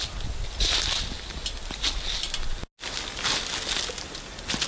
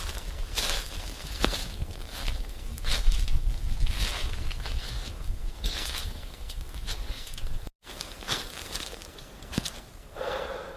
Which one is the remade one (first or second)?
second